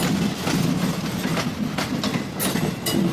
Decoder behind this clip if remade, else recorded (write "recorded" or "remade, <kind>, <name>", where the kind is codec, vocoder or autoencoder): recorded